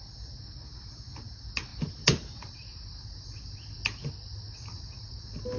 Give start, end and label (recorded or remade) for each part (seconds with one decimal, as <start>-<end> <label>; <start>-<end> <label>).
0.0-5.6 recorded